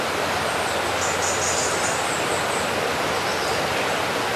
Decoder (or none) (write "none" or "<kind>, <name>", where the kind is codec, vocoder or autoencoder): none